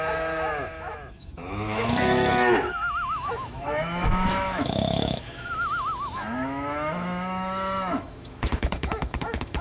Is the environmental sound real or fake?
fake